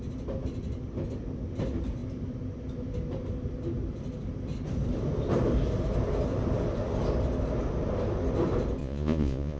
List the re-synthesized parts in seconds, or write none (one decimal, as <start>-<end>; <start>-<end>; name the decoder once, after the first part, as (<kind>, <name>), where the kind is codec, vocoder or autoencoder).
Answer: 8.8-9.6 (vocoder, Vocos)